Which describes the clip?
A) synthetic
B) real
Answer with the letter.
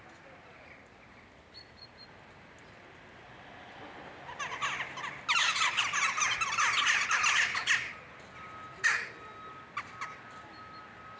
B